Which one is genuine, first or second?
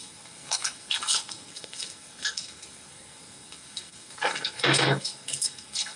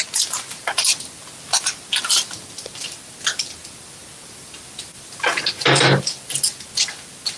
second